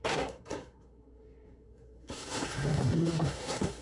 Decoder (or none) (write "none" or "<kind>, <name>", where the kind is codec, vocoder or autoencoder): codec, SNAC